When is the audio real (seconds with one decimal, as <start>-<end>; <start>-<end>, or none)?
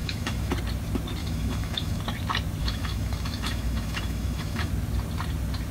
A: 0.5-1.2; 2.0-2.6; 4.7-5.7